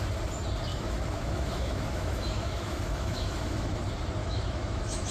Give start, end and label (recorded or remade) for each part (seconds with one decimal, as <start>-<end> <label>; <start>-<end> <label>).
0.0-0.7 recorded; 0.7-3.8 remade; 3.8-4.2 recorded; 4.2-5.1 remade